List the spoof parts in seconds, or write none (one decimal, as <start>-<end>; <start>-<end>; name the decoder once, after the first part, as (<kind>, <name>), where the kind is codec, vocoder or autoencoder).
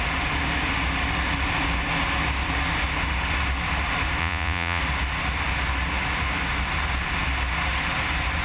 4.2-4.8 (vocoder, Vocos)